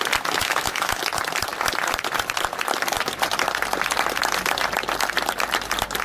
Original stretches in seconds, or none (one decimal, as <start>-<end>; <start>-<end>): 0.0-0.4; 1.0-6.0